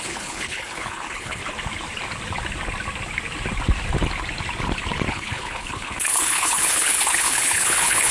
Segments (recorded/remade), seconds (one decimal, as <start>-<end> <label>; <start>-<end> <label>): 0.0-1.4 remade; 1.4-5.1 recorded; 5.1-8.1 remade